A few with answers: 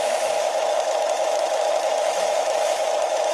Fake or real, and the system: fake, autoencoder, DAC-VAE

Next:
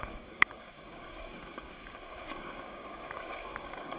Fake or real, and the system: fake, codec, DAC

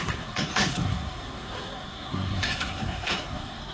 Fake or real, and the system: fake, codec, SNAC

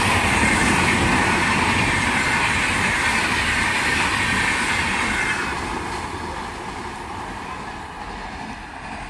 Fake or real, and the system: real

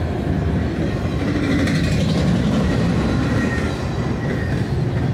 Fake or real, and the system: real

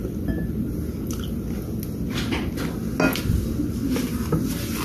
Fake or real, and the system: real